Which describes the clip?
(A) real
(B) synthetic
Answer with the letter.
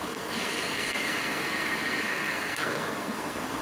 B